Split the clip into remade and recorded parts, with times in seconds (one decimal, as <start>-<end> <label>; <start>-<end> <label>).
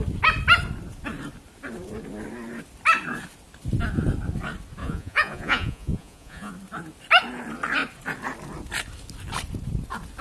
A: 0.0-4.8 recorded; 4.8-6.5 remade; 6.5-10.2 recorded